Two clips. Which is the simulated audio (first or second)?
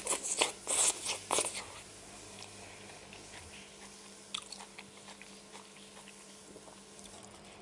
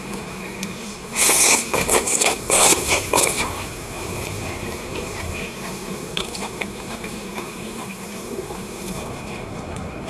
second